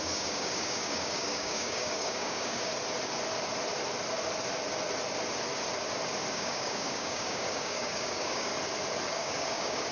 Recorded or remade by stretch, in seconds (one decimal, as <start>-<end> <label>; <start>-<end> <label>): 0.0-2.7 remade; 2.7-6.3 recorded; 6.3-8.5 remade; 8.5-9.1 recorded; 9.1-9.9 remade

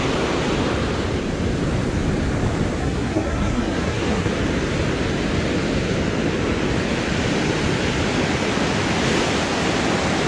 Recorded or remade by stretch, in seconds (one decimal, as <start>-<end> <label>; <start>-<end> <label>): 0.0-2.8 recorded; 2.8-4.3 remade; 4.3-10.3 recorded

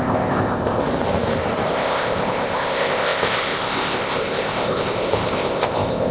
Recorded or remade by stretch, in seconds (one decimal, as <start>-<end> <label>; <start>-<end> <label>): 0.0-0.8 remade; 0.8-1.7 recorded; 1.7-6.1 remade

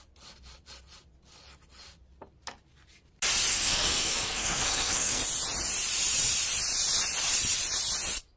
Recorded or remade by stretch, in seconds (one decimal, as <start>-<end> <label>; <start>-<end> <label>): 0.0-3.5 recorded; 3.5-5.2 remade; 5.2-8.4 recorded

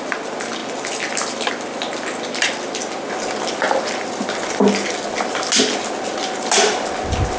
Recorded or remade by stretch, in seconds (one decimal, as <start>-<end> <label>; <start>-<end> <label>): 0.0-7.4 recorded